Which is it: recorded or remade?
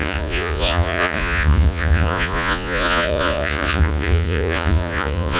remade